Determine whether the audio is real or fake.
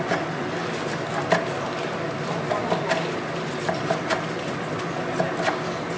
real